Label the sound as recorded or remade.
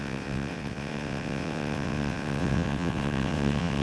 remade